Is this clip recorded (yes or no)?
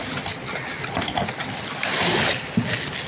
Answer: no